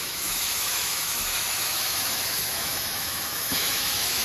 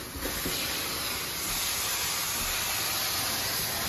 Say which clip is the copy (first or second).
first